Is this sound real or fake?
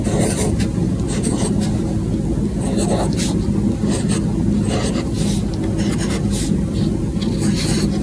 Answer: real